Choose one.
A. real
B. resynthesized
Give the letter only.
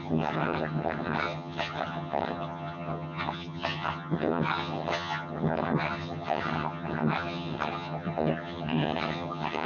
B